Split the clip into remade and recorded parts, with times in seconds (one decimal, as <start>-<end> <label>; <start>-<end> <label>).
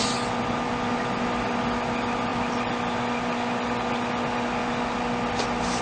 0.0-5.8 recorded